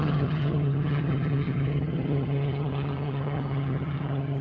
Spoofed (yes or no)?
yes